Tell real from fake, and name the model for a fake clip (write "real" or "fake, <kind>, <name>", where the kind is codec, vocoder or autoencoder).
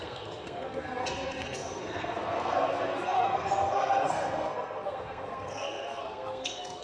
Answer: fake, codec, SNAC